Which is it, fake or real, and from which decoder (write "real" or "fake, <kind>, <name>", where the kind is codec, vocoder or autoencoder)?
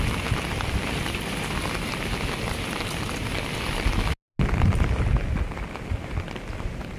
real